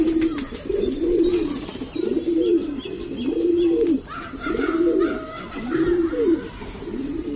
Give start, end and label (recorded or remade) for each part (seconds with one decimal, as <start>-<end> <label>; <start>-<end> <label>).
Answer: 0.0-7.4 remade